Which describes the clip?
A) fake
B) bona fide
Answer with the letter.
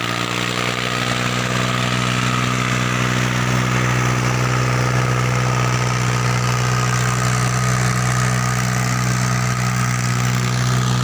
B